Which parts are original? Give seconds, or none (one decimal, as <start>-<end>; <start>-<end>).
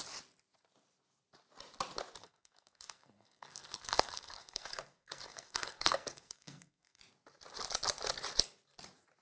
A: 0.0-2.2; 7.0-9.2